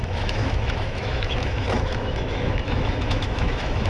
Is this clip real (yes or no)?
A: no